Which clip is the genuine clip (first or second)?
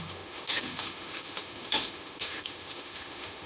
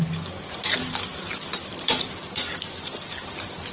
second